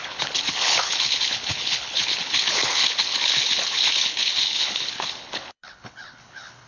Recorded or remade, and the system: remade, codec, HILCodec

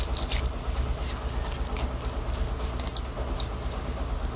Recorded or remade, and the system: recorded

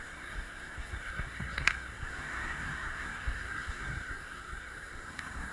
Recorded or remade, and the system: remade, codec, SNAC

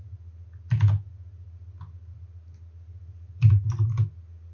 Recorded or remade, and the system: recorded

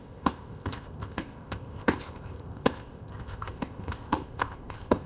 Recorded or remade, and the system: remade, codec, ZipCodec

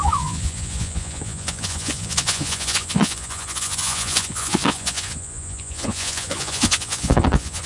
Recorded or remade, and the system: remade, vocoder, Vocos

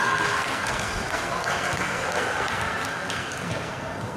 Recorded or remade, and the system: remade, codec, SNAC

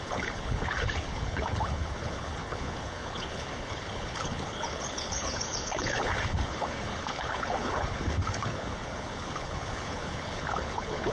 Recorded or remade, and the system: remade, codec, HILCodec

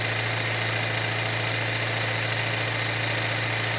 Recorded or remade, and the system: recorded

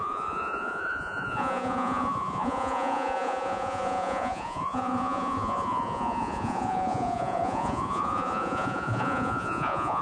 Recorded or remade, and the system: remade, vocoder, Vocos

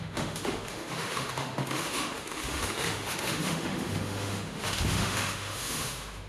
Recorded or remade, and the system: remade, autoencoder, DAC-VAE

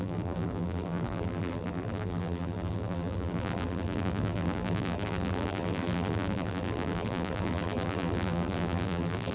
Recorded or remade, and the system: remade, vocoder, BigVGAN v2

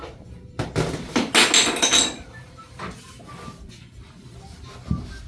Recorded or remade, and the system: recorded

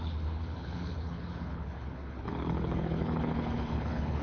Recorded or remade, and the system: remade, codec, HILCodec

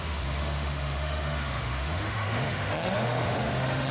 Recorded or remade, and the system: remade, autoencoder, DAC-VAE